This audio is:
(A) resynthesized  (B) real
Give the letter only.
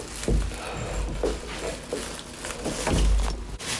B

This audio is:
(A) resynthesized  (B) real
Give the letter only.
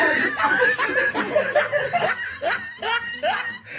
B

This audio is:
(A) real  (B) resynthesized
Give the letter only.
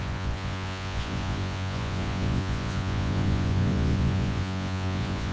B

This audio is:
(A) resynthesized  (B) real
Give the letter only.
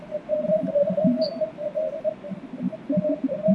B